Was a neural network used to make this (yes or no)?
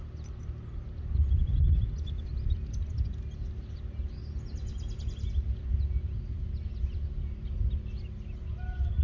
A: no